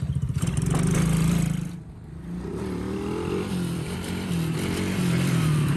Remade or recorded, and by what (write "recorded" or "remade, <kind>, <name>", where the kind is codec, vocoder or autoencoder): remade, vocoder, BigVGAN v2